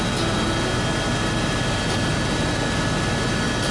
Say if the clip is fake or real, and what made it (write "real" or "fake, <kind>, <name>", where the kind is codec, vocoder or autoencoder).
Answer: real